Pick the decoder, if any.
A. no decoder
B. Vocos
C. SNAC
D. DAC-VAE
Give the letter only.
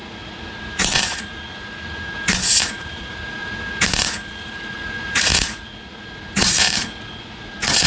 B